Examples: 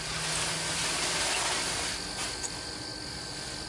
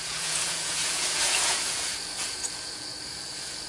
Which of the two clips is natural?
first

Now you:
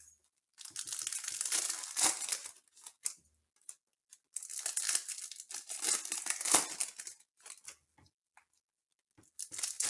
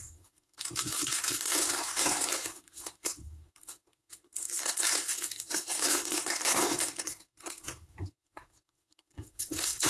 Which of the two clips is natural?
first